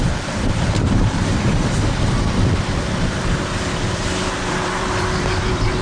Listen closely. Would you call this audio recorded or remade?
remade